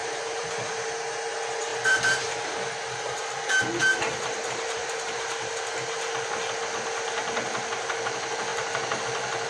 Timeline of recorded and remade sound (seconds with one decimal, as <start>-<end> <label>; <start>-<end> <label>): 0.0-0.9 remade; 0.9-1.7 recorded; 1.7-2.2 remade; 2.2-3.8 recorded; 3.8-5.5 remade; 5.5-8.5 recorded; 8.5-9.0 remade; 9.0-9.5 recorded

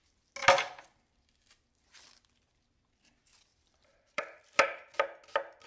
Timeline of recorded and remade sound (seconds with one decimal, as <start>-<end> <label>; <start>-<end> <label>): 0.0-3.5 recorded; 3.5-4.4 remade; 4.4-5.7 recorded